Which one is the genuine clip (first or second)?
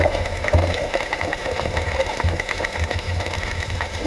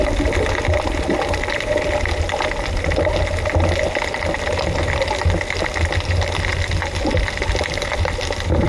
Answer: second